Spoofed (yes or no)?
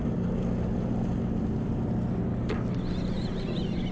no